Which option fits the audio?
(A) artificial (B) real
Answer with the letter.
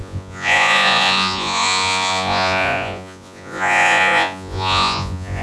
A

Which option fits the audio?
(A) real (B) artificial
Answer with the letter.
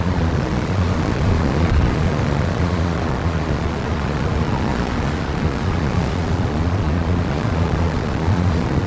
B